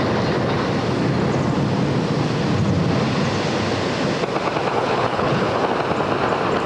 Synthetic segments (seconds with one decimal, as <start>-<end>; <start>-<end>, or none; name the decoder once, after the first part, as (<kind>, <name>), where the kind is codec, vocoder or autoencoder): 4.7-5.6 (codec, HILCodec)